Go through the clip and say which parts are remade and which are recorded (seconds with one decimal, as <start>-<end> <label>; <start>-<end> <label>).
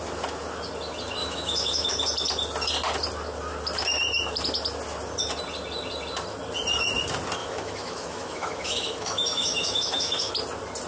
0.0-1.2 recorded; 1.2-1.9 remade; 1.9-7.4 recorded; 7.4-10.3 remade; 10.3-10.9 recorded